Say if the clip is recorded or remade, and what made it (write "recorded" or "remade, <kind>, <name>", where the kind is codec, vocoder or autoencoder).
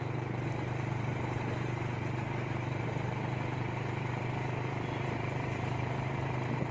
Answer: remade, vocoder, BigVGAN v2